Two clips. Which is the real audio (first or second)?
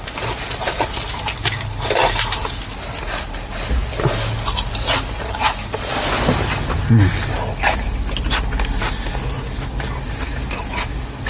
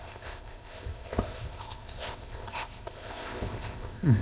first